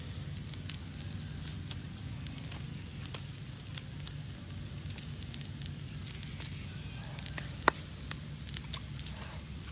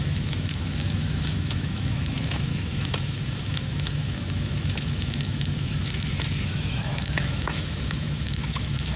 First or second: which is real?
first